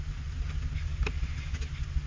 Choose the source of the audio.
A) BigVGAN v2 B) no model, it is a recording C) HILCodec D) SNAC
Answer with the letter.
B